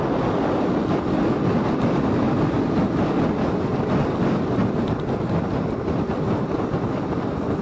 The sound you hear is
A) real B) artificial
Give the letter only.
A